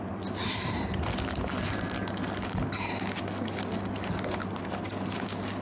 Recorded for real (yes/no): yes